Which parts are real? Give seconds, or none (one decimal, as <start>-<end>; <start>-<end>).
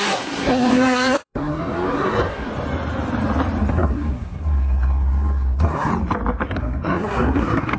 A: 2.5-3.7; 5.9-6.5